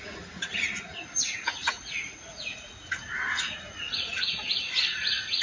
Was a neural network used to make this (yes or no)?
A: yes